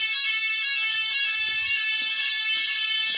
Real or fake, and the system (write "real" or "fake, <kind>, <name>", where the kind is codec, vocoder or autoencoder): fake, codec, DAC